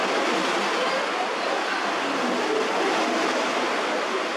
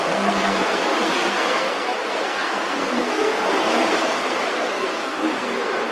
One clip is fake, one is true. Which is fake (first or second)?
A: second